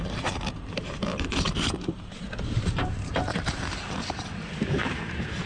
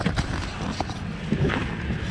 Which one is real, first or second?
second